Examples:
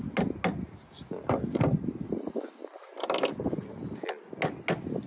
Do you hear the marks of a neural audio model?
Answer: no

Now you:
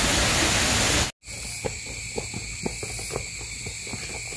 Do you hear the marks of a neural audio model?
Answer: no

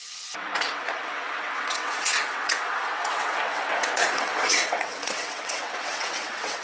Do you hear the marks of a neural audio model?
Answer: yes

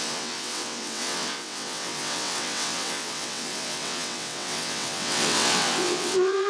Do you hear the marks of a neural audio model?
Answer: yes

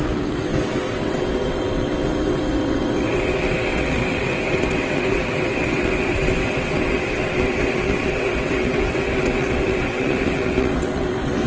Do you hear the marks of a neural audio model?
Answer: yes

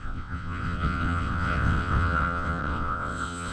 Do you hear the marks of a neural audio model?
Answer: yes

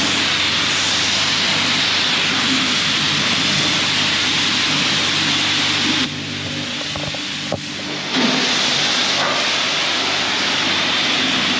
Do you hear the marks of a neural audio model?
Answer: no